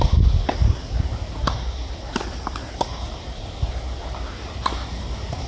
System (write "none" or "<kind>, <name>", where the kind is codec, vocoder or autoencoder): none